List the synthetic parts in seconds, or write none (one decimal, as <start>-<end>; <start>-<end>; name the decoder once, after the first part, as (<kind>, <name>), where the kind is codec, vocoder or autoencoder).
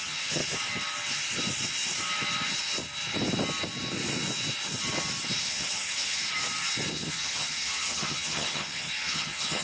0.0-0.4 (vocoder, HiFi-GAN); 5.4-6.2; 6.9-9.6